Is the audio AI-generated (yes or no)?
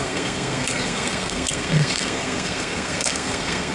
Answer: yes